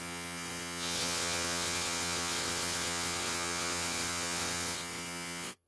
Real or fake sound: fake